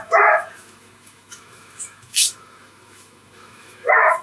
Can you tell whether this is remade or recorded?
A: remade